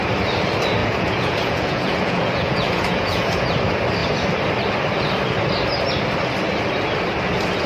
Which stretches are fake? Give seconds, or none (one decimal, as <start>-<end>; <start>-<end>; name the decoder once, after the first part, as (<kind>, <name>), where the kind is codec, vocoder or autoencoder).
0.8-3.4 (vocoder, Vocos)